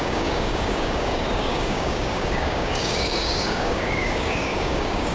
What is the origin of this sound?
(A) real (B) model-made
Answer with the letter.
B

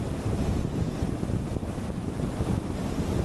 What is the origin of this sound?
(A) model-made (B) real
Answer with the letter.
B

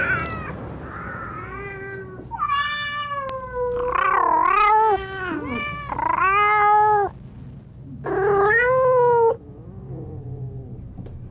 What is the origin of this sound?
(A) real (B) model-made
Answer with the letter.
A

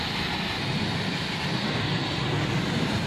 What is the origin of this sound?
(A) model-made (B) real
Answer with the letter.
B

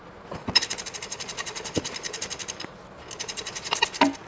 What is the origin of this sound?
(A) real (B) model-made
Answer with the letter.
A